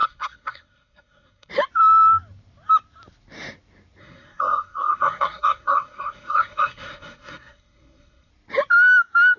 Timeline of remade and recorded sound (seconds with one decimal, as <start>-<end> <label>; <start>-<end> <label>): 0.0-1.5 remade; 1.5-4.0 recorded; 4.0-8.3 remade; 8.3-9.4 recorded